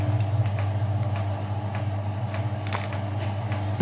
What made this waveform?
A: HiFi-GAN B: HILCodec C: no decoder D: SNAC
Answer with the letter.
C